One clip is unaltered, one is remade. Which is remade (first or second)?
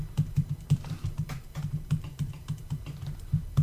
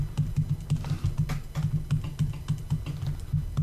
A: first